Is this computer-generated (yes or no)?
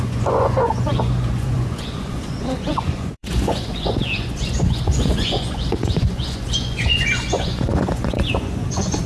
yes